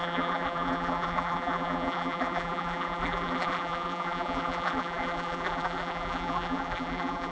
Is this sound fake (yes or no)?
yes